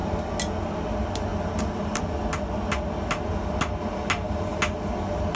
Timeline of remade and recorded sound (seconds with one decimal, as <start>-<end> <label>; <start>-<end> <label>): 0.0-1.3 recorded; 1.3-2.0 remade; 2.0-5.3 recorded